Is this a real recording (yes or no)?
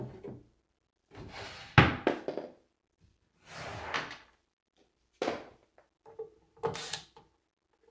yes